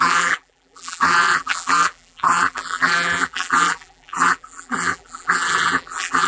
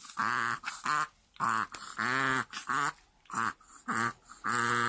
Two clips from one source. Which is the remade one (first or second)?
first